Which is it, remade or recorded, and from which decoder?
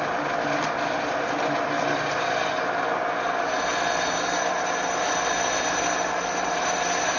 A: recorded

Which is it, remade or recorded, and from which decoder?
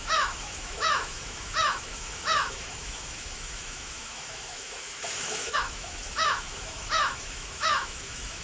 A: remade, autoencoder, DAC-VAE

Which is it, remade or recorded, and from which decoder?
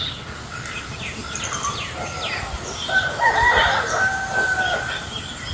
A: recorded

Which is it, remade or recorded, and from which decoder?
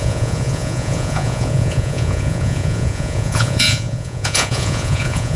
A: remade, vocoder, Vocos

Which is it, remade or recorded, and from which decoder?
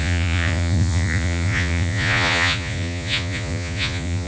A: remade, vocoder, Vocos